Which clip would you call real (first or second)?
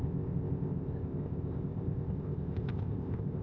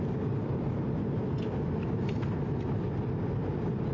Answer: second